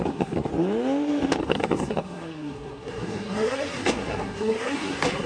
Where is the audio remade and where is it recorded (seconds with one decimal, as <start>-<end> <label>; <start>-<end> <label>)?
0.0-0.5 remade; 0.5-1.4 recorded; 1.4-5.3 remade

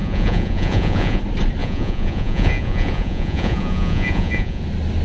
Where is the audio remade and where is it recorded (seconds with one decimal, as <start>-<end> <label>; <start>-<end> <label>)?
0.0-1.2 remade; 1.2-1.6 recorded; 1.6-4.6 remade; 4.6-5.0 recorded

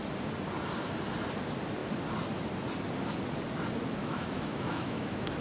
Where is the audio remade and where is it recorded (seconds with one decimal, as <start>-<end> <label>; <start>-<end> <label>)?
0.0-4.0 recorded; 4.0-5.4 remade

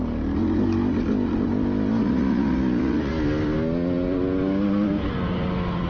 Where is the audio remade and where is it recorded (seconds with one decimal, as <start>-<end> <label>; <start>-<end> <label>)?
0.0-2.0 recorded; 2.0-3.1 remade; 3.1-5.9 recorded

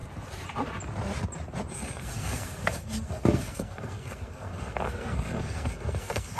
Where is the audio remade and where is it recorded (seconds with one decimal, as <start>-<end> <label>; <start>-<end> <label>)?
0.0-1.7 recorded; 1.7-6.4 remade

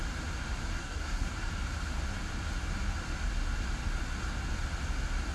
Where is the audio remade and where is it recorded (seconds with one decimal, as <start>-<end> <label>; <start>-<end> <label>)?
0.0-0.8 recorded; 0.8-1.3 remade; 1.3-5.3 recorded

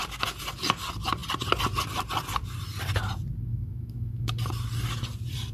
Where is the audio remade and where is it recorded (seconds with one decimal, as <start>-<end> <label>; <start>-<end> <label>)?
0.0-3.5 recorded; 3.5-4.3 remade; 4.3-5.5 recorded

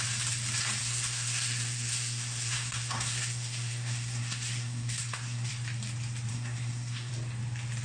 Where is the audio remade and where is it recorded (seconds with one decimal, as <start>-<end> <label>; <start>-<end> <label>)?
0.0-0.8 recorded; 0.8-5.5 remade; 5.5-6.3 recorded; 6.3-7.1 remade; 7.1-7.8 recorded